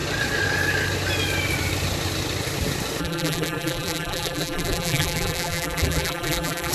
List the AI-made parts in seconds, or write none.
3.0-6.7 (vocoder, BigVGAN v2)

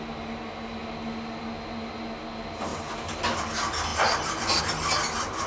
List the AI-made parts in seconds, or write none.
none